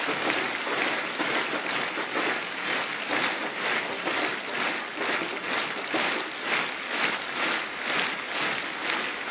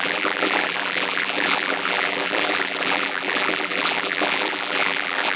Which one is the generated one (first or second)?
second